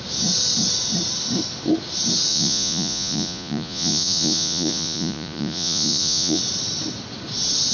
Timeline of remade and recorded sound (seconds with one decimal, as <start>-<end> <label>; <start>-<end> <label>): 0.0-2.3 recorded; 2.3-6.4 remade; 6.4-7.7 recorded